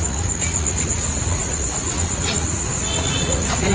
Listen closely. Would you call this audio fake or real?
fake